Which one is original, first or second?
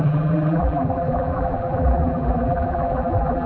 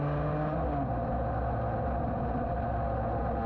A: second